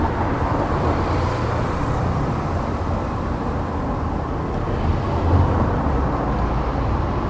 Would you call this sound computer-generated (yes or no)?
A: no